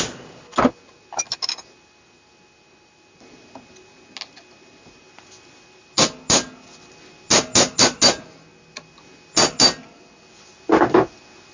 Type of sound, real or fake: real